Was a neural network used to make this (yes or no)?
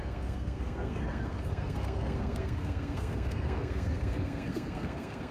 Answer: yes